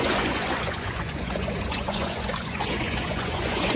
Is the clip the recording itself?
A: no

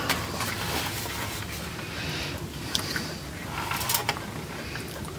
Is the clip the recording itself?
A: no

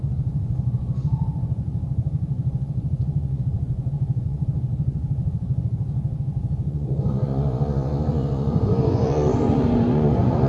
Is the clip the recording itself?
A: no